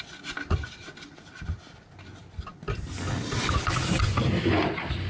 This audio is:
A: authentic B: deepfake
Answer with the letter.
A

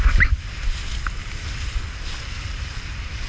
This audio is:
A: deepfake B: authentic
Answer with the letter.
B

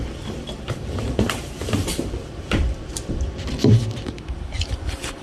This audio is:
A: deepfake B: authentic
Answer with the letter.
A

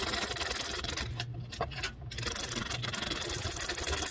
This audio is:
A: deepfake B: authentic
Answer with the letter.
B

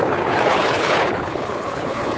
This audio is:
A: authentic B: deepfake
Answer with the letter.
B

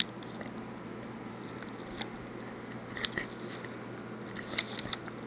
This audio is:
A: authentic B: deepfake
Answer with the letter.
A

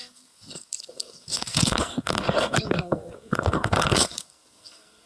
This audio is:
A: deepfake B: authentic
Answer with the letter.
A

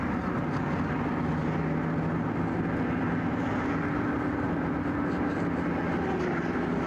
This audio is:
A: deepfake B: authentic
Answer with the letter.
B